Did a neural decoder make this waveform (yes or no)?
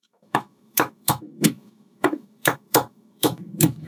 yes